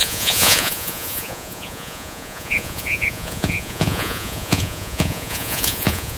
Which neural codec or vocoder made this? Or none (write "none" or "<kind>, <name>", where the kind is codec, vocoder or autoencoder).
vocoder, Vocos